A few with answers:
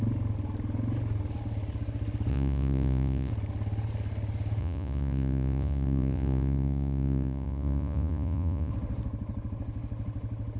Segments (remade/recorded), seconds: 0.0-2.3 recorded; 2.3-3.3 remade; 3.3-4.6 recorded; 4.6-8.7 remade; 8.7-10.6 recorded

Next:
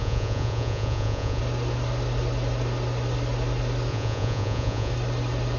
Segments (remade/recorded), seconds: 0.0-1.4 remade; 1.4-3.9 recorded; 3.9-4.9 remade; 4.9-5.6 recorded

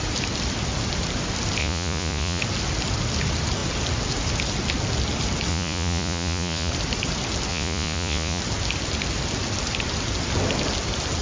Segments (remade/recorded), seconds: 0.0-1.6 recorded; 1.6-2.4 remade; 2.4-5.5 recorded; 5.5-6.7 remade; 6.7-7.5 recorded; 7.5-8.4 remade; 8.4-11.2 recorded

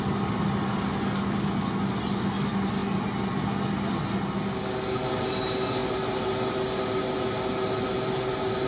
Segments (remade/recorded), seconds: 0.0-8.7 recorded

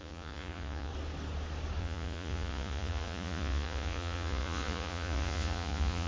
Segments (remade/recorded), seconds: 0.0-0.9 remade; 0.9-1.8 recorded; 1.8-6.1 remade

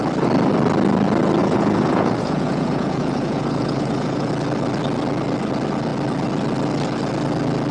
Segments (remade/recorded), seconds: 0.0-1.4 recorded; 1.4-4.3 remade; 4.3-7.7 recorded

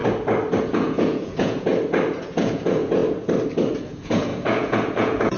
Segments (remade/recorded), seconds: 0.0-0.6 recorded; 0.6-1.7 remade; 1.7-2.2 recorded; 2.2-3.0 remade; 3.0-3.8 recorded; 3.8-5.4 remade